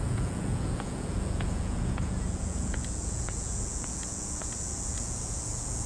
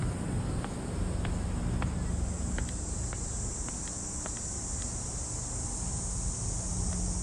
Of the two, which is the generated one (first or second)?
first